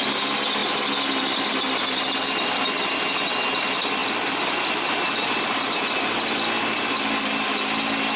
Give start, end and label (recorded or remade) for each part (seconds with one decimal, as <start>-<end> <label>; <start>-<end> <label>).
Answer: 0.0-8.2 recorded